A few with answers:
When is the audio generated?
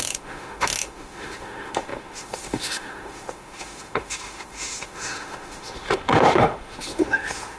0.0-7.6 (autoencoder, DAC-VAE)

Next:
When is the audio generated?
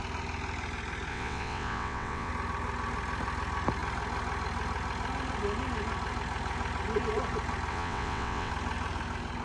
1.1-2.3 (vocoder, WaveNeXt); 7.7-8.5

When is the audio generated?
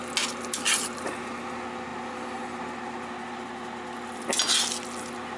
none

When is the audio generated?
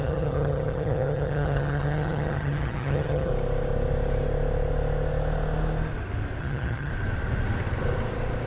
0.0-3.3 (vocoder, HiFi-GAN); 6.4-6.9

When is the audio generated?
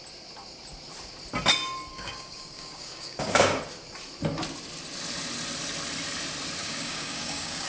1.9-3.6 (codec, DAC); 6.6-7.7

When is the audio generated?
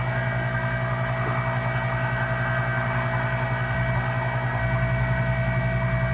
none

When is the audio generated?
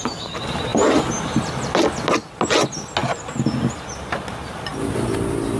none